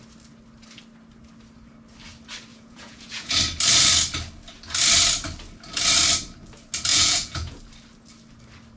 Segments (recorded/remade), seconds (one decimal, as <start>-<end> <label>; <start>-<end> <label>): 0.0-2.5 recorded; 2.5-3.4 remade; 3.4-6.9 recorded; 6.9-7.6 remade; 7.6-8.8 recorded